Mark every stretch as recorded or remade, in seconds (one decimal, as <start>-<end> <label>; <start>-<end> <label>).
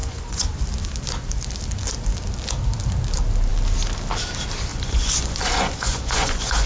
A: 0.0-0.6 remade; 0.6-4.7 recorded; 4.7-6.7 remade